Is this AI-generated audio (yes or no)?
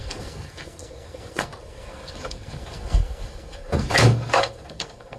yes